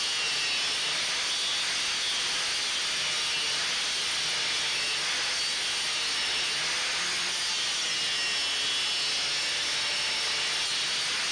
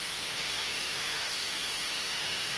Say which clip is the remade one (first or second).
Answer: second